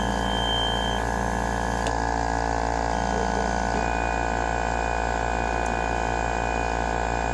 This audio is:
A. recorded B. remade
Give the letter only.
A